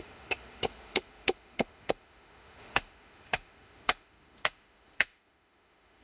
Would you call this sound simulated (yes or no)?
yes